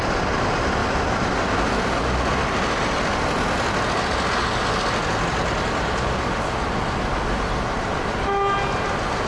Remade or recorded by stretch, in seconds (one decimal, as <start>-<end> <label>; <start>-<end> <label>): 0.0-9.3 recorded